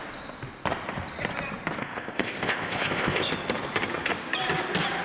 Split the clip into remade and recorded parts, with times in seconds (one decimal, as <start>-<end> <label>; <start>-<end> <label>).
0.0-1.8 recorded; 1.8-3.3 remade; 3.3-5.0 recorded